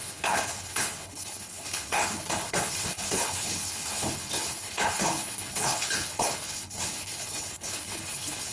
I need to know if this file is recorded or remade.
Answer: remade